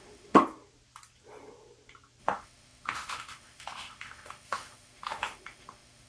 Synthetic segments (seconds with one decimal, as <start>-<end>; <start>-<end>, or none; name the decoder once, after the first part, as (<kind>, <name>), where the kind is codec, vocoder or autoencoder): 0.0-0.4 (autoencoder, DAC-VAE); 2.2-6.1